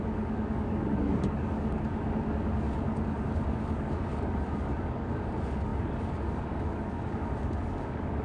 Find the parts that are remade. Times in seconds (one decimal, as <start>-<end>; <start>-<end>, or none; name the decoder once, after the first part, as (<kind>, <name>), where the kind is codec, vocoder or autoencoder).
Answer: 0.0-8.2 (codec, DAC)